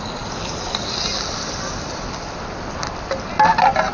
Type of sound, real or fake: real